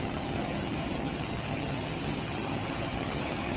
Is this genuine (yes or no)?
no